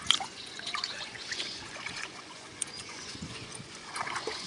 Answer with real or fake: fake